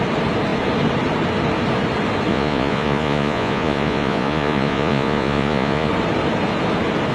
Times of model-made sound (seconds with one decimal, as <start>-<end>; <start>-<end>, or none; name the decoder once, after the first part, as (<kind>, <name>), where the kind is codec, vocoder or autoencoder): 2.3-5.9 (vocoder, Vocos)